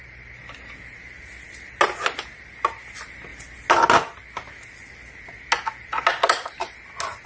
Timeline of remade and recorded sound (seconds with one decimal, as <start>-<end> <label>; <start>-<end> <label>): 0.0-7.3 recorded